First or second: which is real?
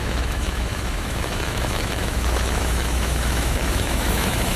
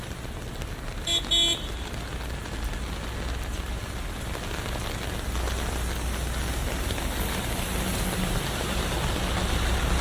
second